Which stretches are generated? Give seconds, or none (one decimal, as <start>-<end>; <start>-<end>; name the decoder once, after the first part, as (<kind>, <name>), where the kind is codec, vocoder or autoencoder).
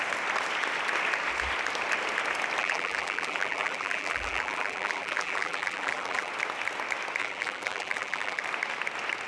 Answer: 2.6-6.3 (vocoder, BigVGAN v2); 7.2-8.4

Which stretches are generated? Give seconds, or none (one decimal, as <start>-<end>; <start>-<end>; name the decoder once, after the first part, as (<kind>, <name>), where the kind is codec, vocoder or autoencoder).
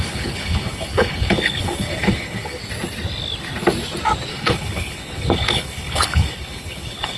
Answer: 0.0-2.6 (codec, HILCodec); 4.3-7.2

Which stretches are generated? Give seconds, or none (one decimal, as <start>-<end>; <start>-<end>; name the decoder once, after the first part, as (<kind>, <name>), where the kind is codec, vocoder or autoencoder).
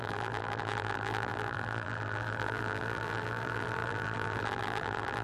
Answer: 0.0-5.2 (vocoder, BigVGAN v2)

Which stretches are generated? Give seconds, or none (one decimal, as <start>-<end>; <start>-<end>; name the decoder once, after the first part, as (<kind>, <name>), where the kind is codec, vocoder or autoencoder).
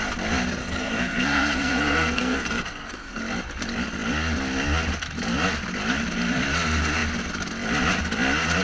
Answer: 0.6-3.2 (codec, SNAC)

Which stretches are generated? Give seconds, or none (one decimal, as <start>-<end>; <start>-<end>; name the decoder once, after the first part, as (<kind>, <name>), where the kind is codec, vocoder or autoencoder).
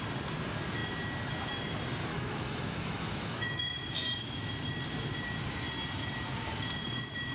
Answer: 2.1-4.5 (autoencoder, DAC-VAE)